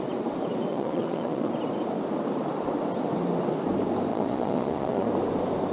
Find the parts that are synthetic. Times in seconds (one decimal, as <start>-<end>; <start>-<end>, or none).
0.7-1.5; 4.1-5.1